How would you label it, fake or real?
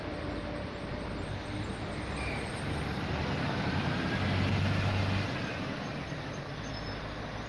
fake